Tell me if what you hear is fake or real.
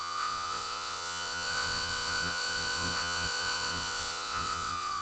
fake